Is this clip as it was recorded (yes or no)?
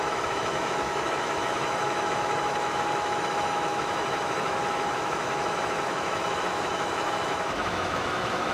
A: no